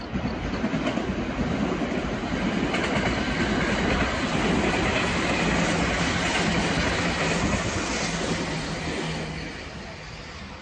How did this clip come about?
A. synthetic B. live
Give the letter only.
B